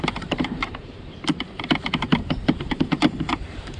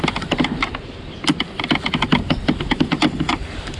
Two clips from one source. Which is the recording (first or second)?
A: second